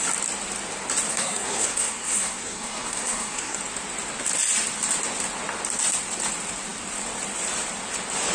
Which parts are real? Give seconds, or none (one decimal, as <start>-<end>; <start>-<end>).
0.0-1.1; 3.6-8.3